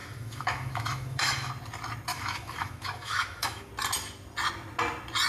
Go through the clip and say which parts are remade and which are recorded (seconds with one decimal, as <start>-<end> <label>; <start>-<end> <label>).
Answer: 0.0-1.5 remade; 1.5-2.1 recorded; 2.1-3.7 remade; 3.7-5.3 recorded